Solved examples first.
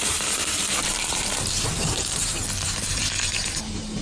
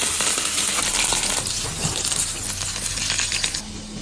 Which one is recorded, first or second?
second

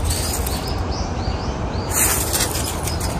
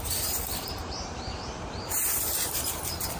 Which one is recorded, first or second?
first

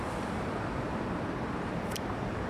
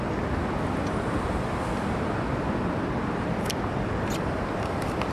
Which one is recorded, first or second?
second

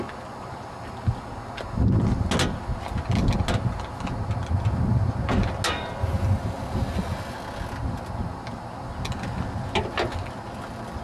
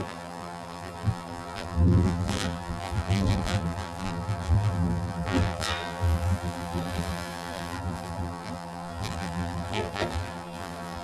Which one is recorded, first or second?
first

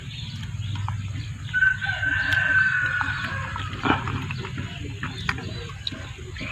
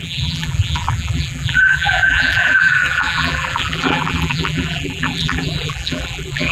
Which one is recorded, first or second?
first